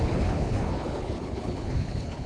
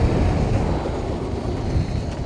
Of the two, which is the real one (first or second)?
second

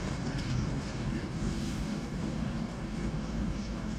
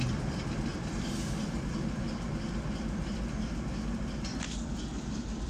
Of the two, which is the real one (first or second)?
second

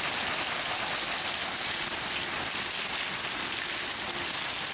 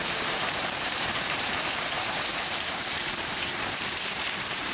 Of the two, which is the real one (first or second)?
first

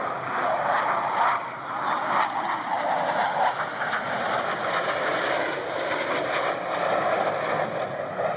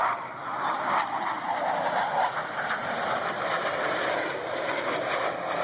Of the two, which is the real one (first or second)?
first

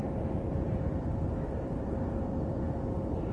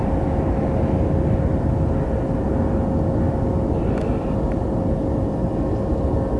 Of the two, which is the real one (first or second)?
second